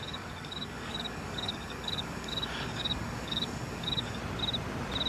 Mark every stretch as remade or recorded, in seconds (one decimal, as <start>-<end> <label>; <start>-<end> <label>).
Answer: 0.0-4.2 remade; 4.2-5.1 recorded